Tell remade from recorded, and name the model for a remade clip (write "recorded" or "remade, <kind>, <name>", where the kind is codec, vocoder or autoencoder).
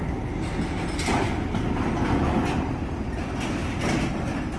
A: recorded